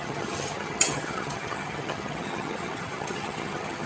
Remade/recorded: remade